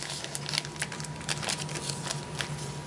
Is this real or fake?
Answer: real